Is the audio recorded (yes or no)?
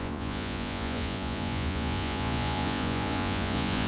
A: no